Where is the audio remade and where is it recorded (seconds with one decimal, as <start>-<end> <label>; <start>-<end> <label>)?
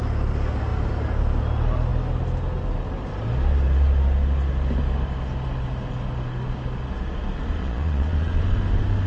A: 0.0-7.6 recorded; 7.6-8.4 remade; 8.4-9.1 recorded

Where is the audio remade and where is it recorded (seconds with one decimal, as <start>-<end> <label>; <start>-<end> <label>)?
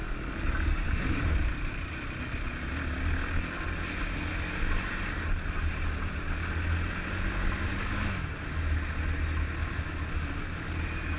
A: 0.0-11.2 recorded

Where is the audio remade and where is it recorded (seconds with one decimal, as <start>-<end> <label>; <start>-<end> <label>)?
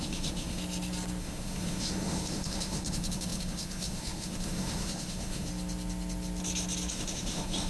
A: 0.0-0.6 remade; 0.6-1.2 recorded; 1.2-5.5 remade; 5.5-6.9 recorded; 6.9-7.7 remade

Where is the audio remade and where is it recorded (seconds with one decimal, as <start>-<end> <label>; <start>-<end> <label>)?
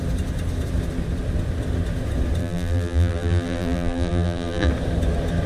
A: 0.0-2.4 recorded; 2.4-4.7 remade; 4.7-5.5 recorded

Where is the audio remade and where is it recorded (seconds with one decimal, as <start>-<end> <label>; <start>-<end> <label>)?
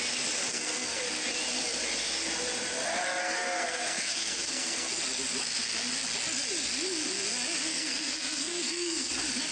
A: 0.0-0.5 recorded; 0.5-1.0 remade; 1.0-3.2 recorded; 3.2-4.9 remade; 4.9-7.7 recorded; 7.7-9.1 remade; 9.1-9.5 recorded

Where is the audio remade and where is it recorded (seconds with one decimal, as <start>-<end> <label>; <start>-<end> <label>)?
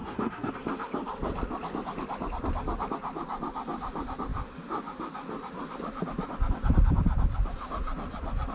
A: 0.0-0.5 remade; 0.5-8.5 recorded